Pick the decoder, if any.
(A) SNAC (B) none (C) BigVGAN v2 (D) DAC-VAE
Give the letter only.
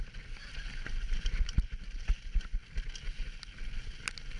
B